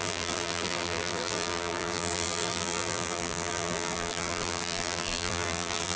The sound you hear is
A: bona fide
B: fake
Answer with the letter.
B